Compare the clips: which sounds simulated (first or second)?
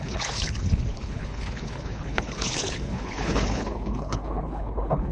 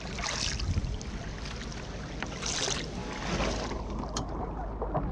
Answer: first